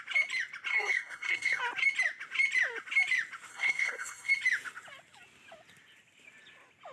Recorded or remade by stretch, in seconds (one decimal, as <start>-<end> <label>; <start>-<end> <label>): 0.0-0.7 recorded; 0.7-1.6 remade; 1.6-3.5 recorded; 3.5-4.3 remade; 4.3-6.9 recorded